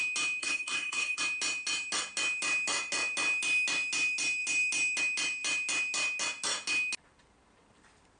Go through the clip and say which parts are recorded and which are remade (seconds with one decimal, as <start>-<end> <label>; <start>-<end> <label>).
0.0-0.4 recorded; 0.4-1.2 remade; 1.2-8.2 recorded

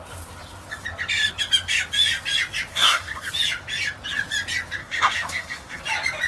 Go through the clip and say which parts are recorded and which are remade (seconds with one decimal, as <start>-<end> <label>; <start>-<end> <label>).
0.0-2.7 recorded; 2.7-3.3 remade; 3.3-4.8 recorded; 4.8-5.8 remade; 5.8-6.3 recorded

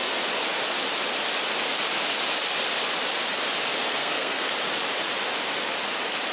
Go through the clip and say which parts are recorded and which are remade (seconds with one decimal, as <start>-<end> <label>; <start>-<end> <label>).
0.0-4.0 recorded; 4.0-4.5 remade; 4.5-6.3 recorded

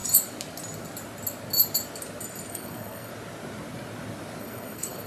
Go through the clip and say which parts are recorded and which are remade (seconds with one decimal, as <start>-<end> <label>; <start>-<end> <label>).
0.0-2.5 recorded; 2.5-3.1 remade; 3.1-4.4 recorded; 4.4-5.1 remade